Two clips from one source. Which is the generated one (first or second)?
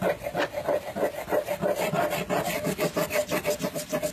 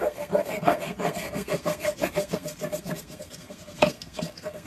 second